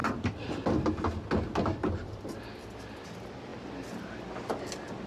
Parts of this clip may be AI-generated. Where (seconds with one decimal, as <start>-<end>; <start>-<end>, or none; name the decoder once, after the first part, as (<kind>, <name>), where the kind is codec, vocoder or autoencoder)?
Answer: none